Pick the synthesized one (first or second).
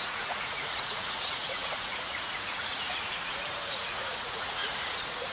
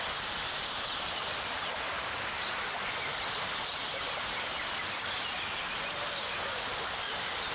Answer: first